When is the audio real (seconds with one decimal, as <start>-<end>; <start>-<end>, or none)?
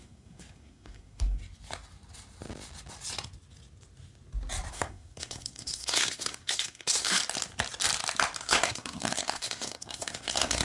1.4-4.7; 7.2-8.4